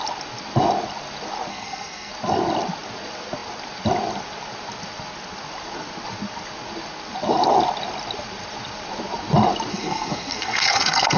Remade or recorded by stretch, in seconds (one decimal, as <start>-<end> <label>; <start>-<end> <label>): 0.0-1.5 recorded; 1.5-2.1 remade; 2.1-9.7 recorded; 9.7-11.2 remade